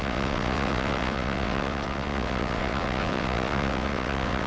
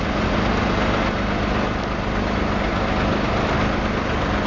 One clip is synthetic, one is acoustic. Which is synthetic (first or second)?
first